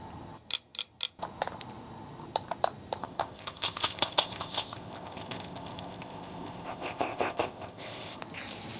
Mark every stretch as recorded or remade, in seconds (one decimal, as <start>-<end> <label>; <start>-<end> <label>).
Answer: 0.0-3.0 recorded; 3.0-8.2 remade; 8.2-8.8 recorded